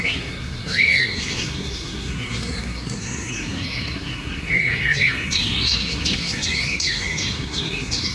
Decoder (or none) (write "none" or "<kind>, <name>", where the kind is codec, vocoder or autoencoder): codec, SNAC